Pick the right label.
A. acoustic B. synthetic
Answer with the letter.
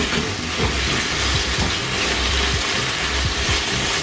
A